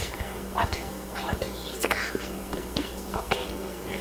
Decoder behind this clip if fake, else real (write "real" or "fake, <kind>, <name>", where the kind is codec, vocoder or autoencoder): fake, codec, SNAC